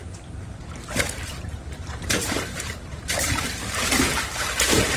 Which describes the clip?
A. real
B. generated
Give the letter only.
B